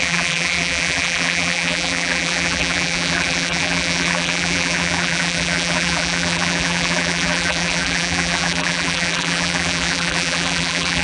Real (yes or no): no